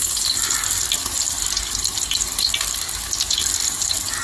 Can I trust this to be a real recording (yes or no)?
yes